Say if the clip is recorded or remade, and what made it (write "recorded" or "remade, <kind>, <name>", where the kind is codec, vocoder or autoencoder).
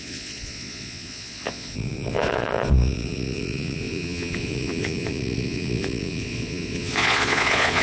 remade, vocoder, Vocos